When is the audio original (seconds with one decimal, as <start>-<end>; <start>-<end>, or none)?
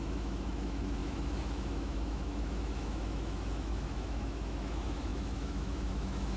none